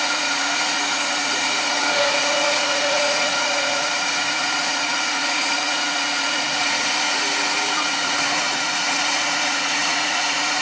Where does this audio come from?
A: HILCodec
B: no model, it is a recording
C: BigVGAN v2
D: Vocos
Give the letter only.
D